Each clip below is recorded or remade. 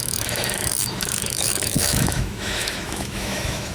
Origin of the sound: remade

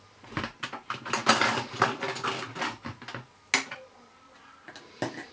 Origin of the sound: recorded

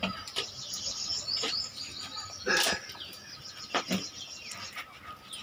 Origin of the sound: recorded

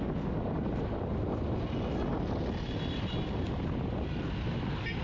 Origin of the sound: recorded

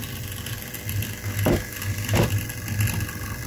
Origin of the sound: recorded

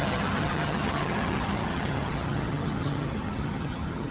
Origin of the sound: remade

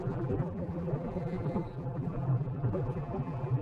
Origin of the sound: remade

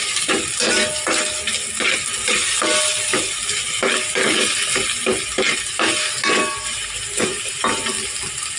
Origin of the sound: recorded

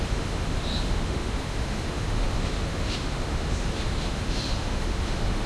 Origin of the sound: remade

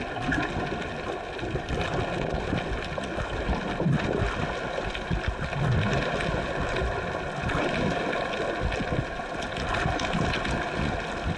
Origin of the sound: recorded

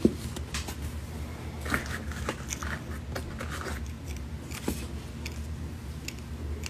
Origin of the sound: recorded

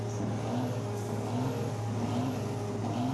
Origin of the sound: recorded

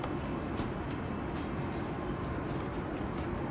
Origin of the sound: recorded